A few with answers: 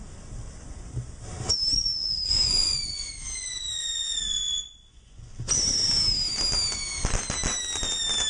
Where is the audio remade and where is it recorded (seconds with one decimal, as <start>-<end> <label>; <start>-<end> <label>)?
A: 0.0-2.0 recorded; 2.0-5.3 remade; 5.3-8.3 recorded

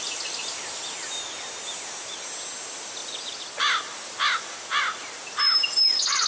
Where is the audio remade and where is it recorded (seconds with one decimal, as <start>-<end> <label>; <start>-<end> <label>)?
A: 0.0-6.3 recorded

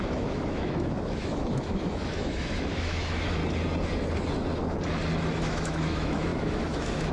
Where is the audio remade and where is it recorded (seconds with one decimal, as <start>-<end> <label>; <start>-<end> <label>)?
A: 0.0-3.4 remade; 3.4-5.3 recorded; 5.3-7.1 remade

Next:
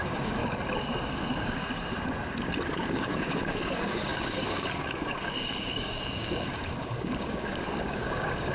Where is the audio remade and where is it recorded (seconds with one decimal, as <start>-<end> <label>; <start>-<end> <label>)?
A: 0.0-0.4 remade; 0.4-1.1 recorded; 1.1-1.6 remade; 1.6-2.7 recorded; 2.7-8.5 remade

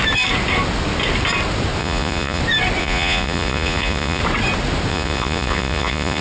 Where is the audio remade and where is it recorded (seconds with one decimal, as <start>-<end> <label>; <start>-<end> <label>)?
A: 0.0-1.8 recorded; 1.8-2.4 remade; 2.4-2.8 recorded; 2.8-4.2 remade; 4.2-4.9 recorded; 4.9-6.2 remade

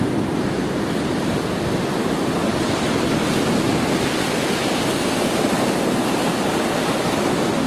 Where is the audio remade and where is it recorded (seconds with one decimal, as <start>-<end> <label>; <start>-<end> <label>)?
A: 0.0-7.7 recorded

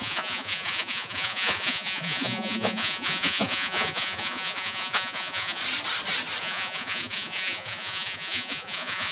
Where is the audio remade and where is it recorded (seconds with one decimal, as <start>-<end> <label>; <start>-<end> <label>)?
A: 0.0-5.6 remade; 5.6-6.4 recorded; 6.4-9.1 remade